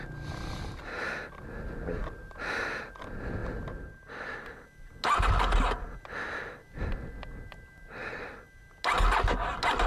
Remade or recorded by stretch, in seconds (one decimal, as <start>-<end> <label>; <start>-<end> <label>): 0.0-9.9 recorded